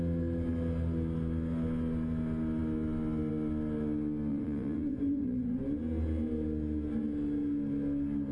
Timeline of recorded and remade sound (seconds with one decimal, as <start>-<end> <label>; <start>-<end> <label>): 0.0-4.3 recorded; 4.3-5.6 remade; 5.6-8.3 recorded